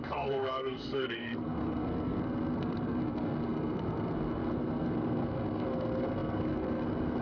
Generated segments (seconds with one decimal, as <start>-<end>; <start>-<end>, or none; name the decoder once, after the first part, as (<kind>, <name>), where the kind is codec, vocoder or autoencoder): 0.0-7.2 (codec, SNAC)